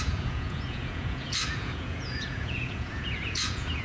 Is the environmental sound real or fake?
fake